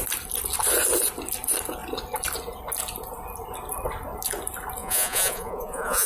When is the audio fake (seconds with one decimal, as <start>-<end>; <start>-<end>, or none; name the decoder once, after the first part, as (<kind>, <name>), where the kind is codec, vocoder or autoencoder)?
4.8-6.1 (vocoder, Vocos)